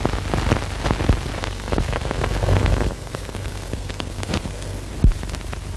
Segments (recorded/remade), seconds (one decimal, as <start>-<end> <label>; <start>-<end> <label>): 0.0-1.4 recorded; 1.4-4.9 remade; 4.9-5.8 recorded